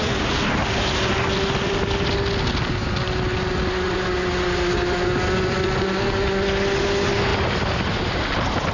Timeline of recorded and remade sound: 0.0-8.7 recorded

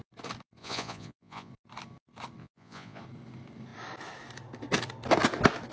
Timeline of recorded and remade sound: 0.0-0.6 recorded; 0.6-1.5 remade; 1.5-2.4 recorded; 2.4-3.0 remade; 3.0-5.7 recorded

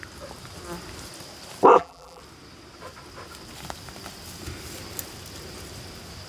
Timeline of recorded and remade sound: 0.0-1.7 recorded; 1.7-2.2 remade; 2.2-6.3 recorded